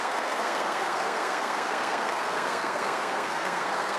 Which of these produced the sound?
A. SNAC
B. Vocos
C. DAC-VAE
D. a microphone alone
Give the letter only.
A